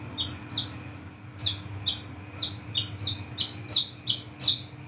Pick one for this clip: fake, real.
real